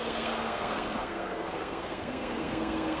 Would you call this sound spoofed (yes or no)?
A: yes